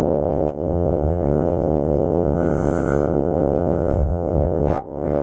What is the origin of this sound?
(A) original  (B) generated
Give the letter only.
B